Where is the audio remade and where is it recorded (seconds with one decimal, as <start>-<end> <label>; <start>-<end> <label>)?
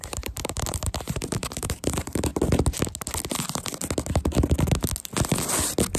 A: 0.0-2.3 remade; 2.3-6.0 recorded